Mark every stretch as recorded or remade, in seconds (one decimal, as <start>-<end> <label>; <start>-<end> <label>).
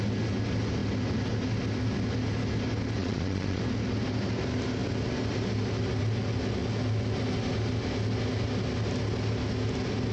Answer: 0.0-3.0 recorded; 3.0-3.6 remade; 3.6-10.1 recorded